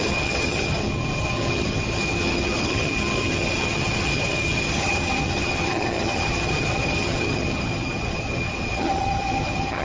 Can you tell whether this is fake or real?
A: fake